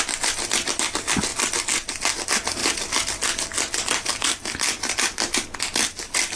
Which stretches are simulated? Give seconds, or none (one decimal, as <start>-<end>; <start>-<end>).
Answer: none